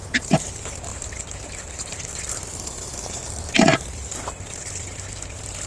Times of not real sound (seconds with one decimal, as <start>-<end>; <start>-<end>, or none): none